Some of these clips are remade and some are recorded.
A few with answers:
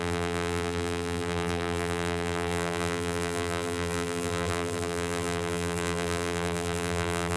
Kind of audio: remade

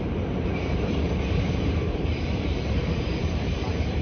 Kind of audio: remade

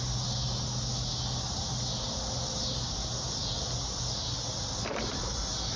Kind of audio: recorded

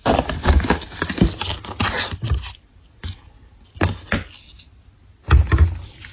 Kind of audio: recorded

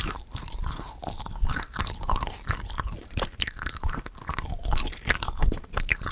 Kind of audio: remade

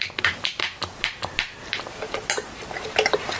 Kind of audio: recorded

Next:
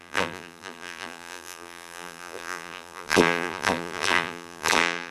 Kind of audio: remade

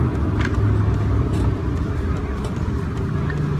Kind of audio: recorded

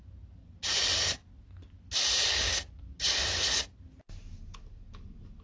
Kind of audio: recorded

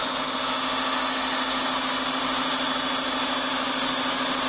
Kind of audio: recorded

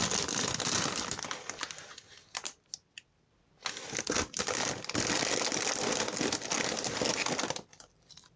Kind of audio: recorded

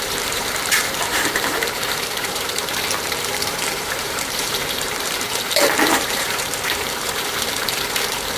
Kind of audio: remade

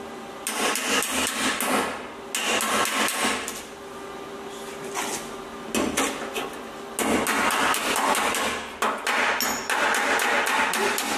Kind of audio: recorded